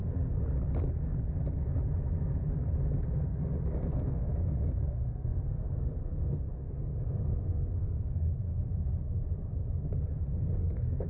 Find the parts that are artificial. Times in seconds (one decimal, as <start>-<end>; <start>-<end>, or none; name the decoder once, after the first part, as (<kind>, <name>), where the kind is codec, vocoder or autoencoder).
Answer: 3.7-8.3 (codec, SNAC); 10.6-11.1